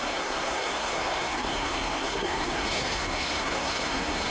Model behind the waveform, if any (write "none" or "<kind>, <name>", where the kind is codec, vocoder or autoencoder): codec, SNAC